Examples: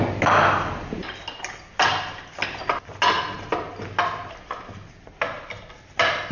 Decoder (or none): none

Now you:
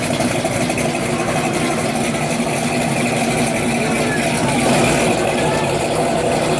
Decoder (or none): none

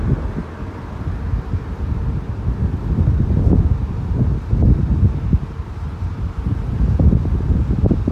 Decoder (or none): none